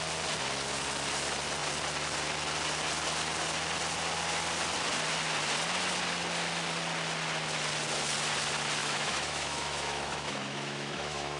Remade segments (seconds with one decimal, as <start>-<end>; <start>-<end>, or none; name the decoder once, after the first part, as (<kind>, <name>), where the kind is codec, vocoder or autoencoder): 8.8-11.4 (autoencoder, DAC-VAE)